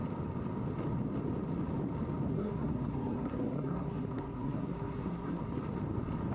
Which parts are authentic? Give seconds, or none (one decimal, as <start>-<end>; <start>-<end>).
0.0-2.3; 5.6-6.3